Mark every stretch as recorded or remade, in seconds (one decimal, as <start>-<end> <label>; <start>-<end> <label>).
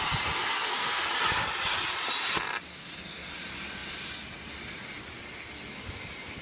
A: 0.0-0.4 recorded; 0.4-1.1 remade; 1.1-2.7 recorded; 2.7-3.3 remade; 3.3-6.4 recorded